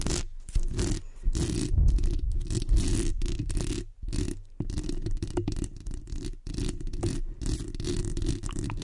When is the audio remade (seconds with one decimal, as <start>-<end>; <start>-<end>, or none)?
none